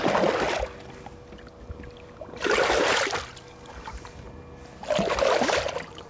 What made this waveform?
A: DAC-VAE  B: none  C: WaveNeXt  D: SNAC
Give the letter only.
B